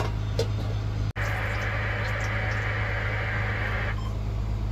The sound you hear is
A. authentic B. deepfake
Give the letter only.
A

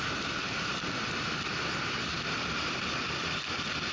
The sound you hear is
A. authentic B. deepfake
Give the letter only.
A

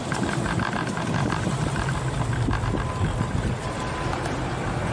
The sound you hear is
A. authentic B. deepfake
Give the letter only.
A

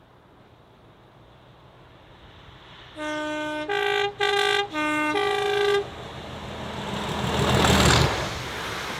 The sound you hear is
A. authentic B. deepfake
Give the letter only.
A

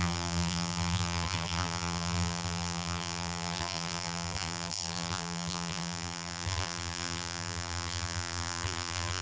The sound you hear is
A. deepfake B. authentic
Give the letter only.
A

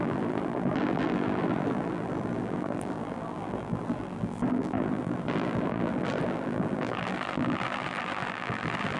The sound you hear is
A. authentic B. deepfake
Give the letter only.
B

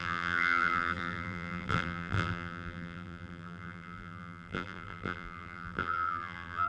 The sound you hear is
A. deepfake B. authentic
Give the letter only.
A